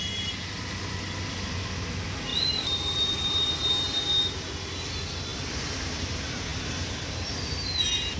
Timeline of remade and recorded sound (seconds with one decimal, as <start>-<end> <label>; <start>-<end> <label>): 0.0-2.3 recorded; 2.3-3.7 remade; 3.7-5.3 recorded; 5.3-5.9 remade; 5.9-8.2 recorded